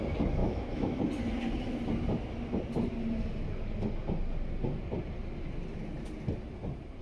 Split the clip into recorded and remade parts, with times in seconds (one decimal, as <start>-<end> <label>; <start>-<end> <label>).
0.0-0.4 recorded; 0.4-1.0 remade; 1.0-7.0 recorded